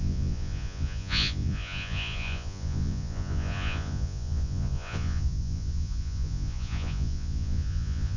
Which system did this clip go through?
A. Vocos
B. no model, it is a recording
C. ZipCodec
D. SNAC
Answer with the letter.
A